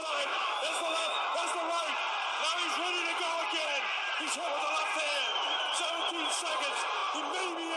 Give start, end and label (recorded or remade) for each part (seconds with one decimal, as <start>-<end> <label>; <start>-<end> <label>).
0.0-1.2 remade; 1.2-7.8 recorded